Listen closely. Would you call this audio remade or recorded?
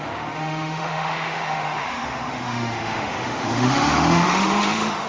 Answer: remade